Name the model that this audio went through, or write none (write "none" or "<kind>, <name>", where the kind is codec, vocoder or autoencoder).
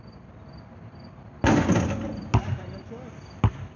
none